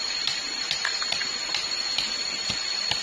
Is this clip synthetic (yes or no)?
no